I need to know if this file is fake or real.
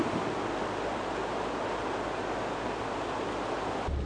real